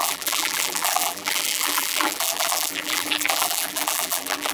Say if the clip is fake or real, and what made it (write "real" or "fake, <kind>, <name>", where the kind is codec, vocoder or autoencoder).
fake, vocoder, BigVGAN v2